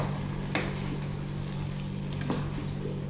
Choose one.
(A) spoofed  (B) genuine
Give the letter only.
B